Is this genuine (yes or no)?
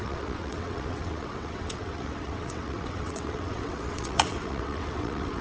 no